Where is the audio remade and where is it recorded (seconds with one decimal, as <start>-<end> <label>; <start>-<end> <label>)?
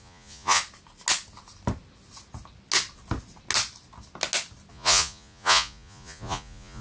0.0-0.6 remade; 0.6-4.7 recorded; 4.7-6.8 remade